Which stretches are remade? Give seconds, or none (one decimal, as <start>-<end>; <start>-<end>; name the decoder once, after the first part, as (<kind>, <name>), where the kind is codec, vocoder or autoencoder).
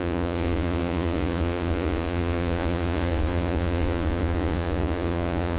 0.0-5.6 (vocoder, Vocos)